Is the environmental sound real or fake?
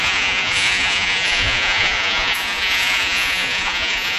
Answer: fake